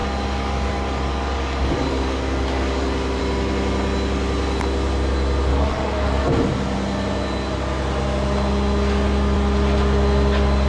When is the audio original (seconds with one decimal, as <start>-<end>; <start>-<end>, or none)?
3.2-5.5; 6.2-10.7